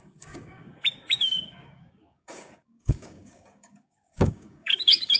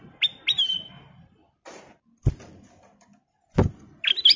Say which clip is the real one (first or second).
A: second